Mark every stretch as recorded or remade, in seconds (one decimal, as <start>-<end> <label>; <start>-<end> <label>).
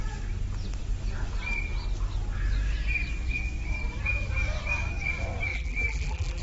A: 0.0-5.5 recorded; 5.5-6.4 remade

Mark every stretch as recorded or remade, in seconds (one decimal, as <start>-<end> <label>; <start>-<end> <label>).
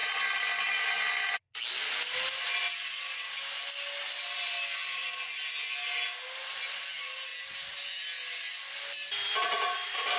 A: 0.0-10.2 recorded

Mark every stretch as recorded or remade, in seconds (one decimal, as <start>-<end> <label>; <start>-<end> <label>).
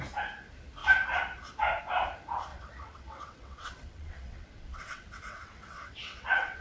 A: 0.0-2.5 recorded; 2.5-6.6 remade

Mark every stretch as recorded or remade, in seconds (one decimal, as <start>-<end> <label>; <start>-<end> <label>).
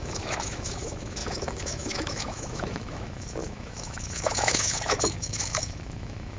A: 0.0-6.4 remade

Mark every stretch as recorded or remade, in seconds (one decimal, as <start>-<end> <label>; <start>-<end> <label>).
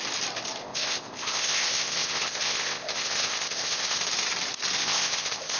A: 0.0-0.6 recorded; 0.6-4.0 remade; 4.0-4.8 recorded; 4.8-5.6 remade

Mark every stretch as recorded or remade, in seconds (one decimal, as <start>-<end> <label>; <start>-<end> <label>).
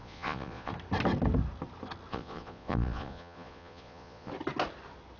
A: 0.0-0.7 remade; 0.7-2.1 recorded; 2.1-4.3 remade; 4.3-5.2 recorded